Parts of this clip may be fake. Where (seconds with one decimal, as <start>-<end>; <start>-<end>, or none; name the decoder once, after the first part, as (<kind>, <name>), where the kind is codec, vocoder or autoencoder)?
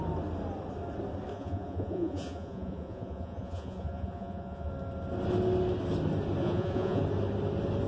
1.3-4.7 (vocoder, Vocos); 6.4-7.0